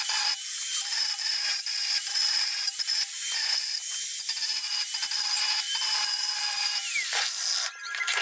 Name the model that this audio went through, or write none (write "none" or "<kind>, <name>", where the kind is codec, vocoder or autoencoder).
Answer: none